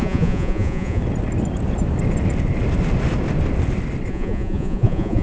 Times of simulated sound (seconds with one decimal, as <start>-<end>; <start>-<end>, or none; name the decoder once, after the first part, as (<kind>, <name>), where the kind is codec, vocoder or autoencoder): 0.0-1.0 (vocoder, Vocos); 4.1-5.2

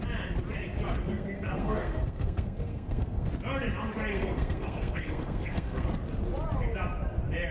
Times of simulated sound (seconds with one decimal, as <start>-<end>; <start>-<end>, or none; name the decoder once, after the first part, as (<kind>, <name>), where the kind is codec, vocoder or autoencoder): 1.0-3.3 (codec, SNAC); 4.1-5.9

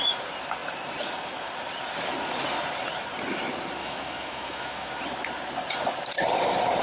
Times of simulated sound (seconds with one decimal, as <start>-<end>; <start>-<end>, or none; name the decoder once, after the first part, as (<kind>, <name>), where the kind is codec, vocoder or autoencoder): 3.8-4.9 (autoencoder, DAC-VAE)

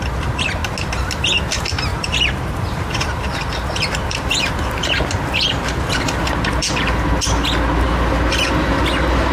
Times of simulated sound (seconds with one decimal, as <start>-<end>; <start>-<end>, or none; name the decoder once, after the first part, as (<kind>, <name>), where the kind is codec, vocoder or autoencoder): 1.9-4.7 (vocoder, BigVGAN v2)

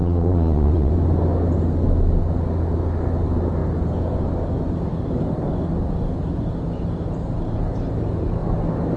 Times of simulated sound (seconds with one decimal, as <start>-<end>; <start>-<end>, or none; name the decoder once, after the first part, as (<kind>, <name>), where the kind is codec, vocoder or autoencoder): 0.0-0.9 (vocoder, Vocos)